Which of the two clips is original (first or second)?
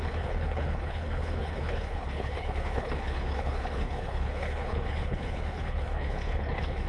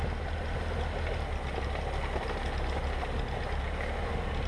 second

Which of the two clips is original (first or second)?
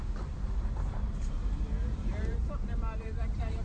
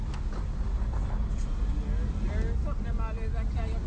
second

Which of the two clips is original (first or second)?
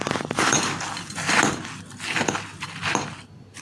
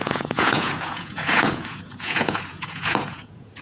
first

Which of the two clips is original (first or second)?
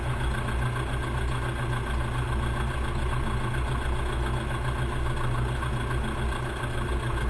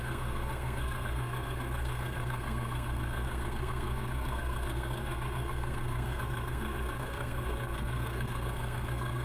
first